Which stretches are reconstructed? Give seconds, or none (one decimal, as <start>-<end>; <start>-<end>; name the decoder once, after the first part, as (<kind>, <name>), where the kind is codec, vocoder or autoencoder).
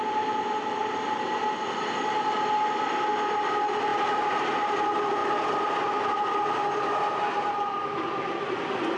5.2-5.7 (vocoder, BigVGAN v2)